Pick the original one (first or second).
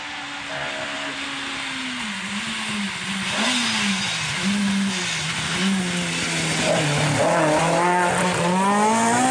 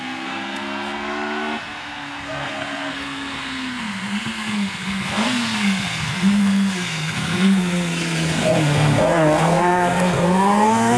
first